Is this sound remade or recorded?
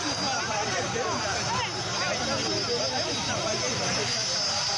recorded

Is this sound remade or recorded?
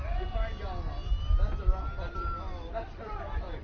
recorded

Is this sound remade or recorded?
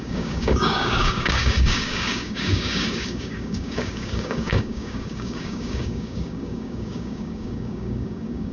remade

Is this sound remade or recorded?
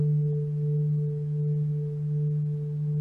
recorded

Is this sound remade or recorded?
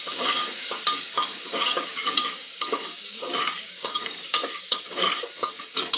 remade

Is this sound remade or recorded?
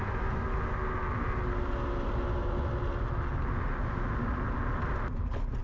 recorded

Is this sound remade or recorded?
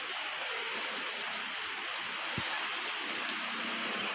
recorded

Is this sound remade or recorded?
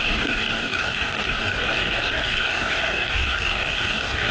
remade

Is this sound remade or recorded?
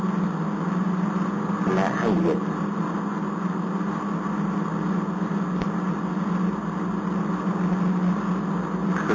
recorded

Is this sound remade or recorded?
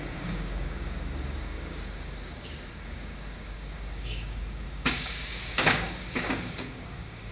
remade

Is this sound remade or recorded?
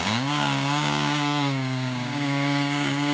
remade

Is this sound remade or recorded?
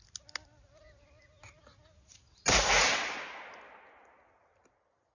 recorded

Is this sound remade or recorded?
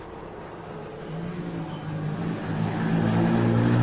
recorded